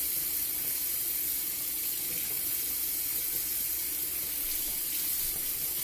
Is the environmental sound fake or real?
real